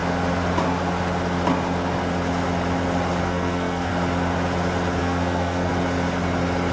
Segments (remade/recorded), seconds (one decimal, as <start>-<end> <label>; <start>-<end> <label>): 0.0-3.2 recorded; 3.2-3.9 remade; 3.9-5.0 recorded; 5.0-5.7 remade; 5.7-6.7 recorded